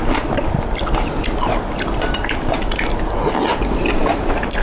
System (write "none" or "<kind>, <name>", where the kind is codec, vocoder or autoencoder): none